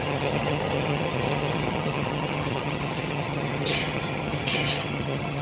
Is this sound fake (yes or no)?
yes